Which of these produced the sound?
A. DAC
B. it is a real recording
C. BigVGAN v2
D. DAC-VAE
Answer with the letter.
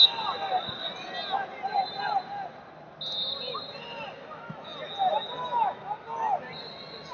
B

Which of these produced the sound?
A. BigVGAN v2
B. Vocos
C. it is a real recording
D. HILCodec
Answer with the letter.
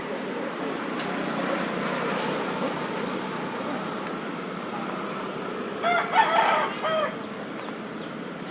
C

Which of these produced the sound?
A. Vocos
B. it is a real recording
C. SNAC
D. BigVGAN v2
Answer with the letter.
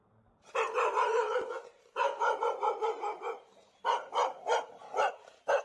D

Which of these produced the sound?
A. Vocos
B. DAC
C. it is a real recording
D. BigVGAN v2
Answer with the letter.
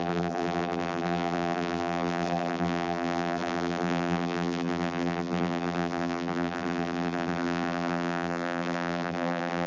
D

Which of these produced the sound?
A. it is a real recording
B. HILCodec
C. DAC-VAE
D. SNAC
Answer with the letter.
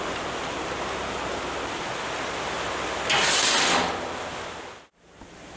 A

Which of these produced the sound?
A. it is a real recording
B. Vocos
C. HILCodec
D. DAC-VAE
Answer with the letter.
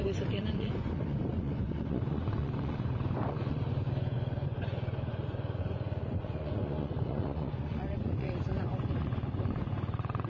B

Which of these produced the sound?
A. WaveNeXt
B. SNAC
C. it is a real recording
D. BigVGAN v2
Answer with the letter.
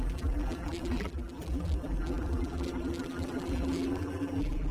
D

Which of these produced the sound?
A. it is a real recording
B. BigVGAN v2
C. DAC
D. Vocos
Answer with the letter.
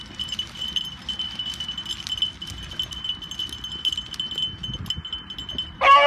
A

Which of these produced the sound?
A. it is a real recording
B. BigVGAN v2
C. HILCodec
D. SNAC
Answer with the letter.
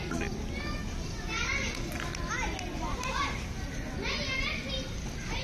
A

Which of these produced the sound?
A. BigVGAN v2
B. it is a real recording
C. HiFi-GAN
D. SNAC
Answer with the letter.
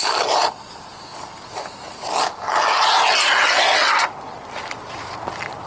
B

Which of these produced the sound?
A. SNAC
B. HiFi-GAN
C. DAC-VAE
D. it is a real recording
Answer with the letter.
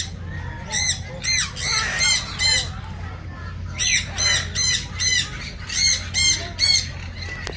D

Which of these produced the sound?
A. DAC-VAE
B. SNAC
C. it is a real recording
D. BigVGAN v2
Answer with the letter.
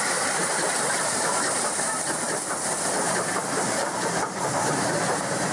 D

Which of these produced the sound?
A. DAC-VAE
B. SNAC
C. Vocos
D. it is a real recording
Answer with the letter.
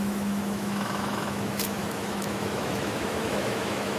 A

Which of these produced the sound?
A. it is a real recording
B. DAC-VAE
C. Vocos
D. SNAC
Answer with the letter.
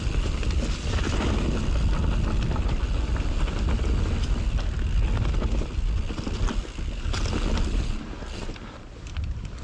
A